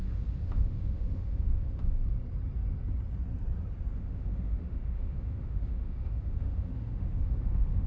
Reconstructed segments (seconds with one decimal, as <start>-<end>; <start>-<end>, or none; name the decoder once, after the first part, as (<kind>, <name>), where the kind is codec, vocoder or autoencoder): 0.0-2.1 (autoencoder, DAC-VAE); 3.9-7.9